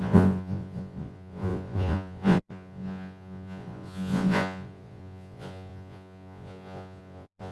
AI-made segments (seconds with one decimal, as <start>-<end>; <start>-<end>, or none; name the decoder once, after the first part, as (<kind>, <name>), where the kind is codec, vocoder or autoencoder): 0.0-7.5 (vocoder, Vocos)